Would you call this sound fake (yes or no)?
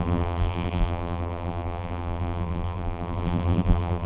yes